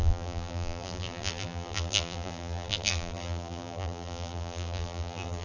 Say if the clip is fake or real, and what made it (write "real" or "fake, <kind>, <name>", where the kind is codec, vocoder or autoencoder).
fake, vocoder, BigVGAN v2